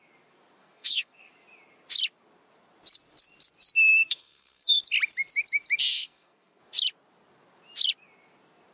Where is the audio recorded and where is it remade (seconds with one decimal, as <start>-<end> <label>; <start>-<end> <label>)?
0.0-0.6 recorded; 0.6-1.3 remade; 1.3-3.9 recorded; 3.9-4.8 remade; 4.8-5.9 recorded; 5.9-6.6 remade; 6.6-8.7 recorded